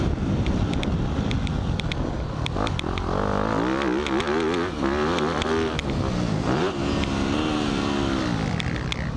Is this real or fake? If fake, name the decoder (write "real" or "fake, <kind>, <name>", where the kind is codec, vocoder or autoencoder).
real